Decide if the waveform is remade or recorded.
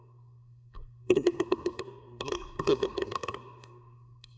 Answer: remade